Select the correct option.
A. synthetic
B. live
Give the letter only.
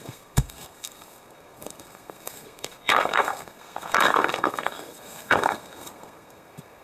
A